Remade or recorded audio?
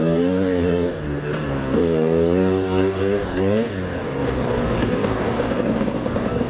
remade